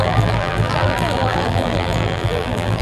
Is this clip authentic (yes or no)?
no